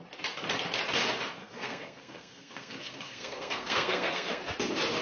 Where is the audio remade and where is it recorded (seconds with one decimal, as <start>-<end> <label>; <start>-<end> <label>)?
0.0-1.4 recorded; 1.4-4.4 remade; 4.4-5.0 recorded